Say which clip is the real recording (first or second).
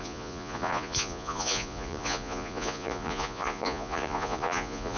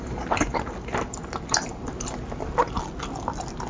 second